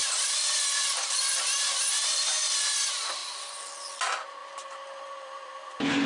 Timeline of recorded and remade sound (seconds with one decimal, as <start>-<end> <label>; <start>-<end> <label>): 0.0-2.3 remade; 2.3-3.2 recorded; 3.2-3.9 remade; 3.9-4.4 recorded; 4.4-6.1 remade

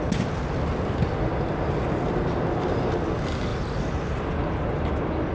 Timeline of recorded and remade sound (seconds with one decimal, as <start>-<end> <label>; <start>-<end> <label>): 0.0-5.3 recorded

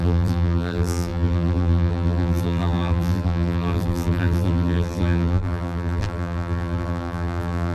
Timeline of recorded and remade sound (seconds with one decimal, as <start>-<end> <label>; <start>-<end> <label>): 0.0-7.7 remade

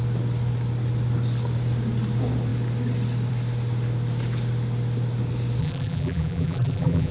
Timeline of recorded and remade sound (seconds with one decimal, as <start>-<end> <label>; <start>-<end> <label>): 0.0-5.6 recorded; 5.6-7.1 remade

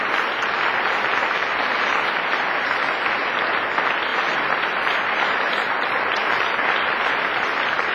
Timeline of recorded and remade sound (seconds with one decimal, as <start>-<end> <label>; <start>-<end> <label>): 0.0-1.9 recorded; 1.9-2.8 remade; 2.8-4.1 recorded; 4.1-4.8 remade; 4.8-7.9 recorded